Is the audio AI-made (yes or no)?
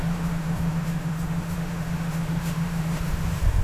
yes